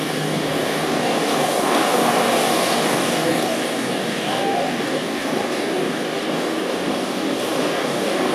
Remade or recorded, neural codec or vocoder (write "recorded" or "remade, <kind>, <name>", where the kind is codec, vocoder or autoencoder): remade, codec, DAC